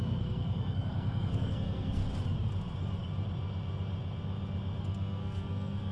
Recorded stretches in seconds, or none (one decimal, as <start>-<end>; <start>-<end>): 2.0-4.8